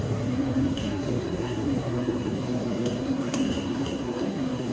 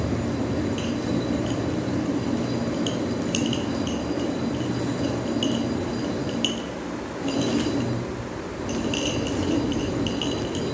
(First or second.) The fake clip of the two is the first